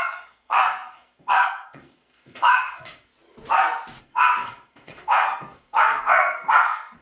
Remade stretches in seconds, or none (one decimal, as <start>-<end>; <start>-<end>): 0.0-3.1; 4.0-7.0